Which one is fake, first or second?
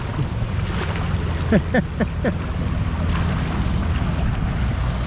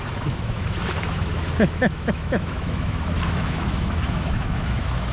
second